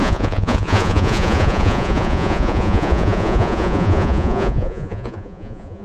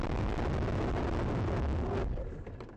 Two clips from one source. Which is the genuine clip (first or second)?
second